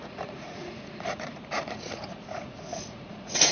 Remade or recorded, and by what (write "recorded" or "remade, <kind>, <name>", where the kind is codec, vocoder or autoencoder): remade, vocoder, Vocos